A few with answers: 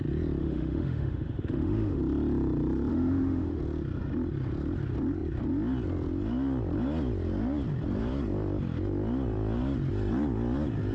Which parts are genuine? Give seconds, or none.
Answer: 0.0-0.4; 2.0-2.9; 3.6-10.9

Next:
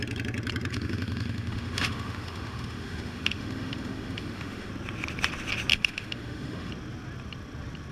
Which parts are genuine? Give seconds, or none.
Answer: 0.0-0.7; 4.7-5.7; 6.7-7.9

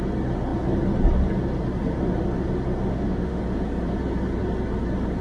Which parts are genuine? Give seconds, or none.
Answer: 0.0-2.9; 3.4-5.2

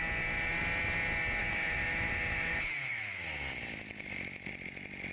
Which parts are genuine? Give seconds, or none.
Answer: 0.0-1.4; 4.5-5.1

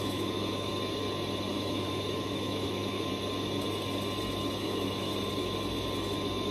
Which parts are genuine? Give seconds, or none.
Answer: 0.7-1.5; 3.1-4.6; 5.1-6.5

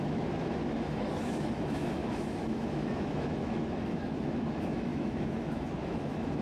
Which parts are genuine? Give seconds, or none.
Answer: none

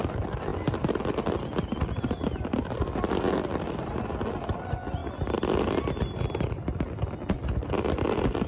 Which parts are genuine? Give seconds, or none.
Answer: 0.0-8.5